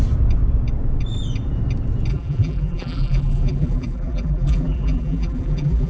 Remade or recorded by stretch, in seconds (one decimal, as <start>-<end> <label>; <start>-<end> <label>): 0.0-2.1 recorded; 2.1-5.9 remade